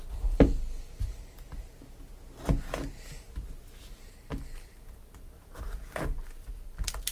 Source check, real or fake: real